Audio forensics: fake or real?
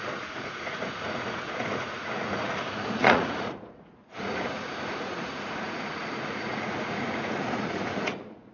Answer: fake